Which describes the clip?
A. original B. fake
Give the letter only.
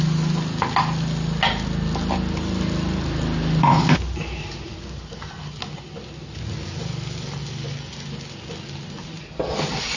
A